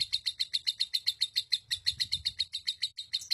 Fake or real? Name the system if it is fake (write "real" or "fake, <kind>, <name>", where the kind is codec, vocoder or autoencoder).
real